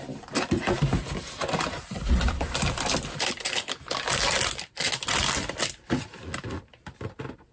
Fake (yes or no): no